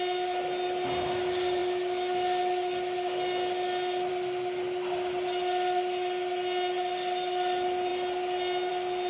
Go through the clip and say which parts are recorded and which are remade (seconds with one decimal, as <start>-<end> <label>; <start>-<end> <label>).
0.0-9.1 recorded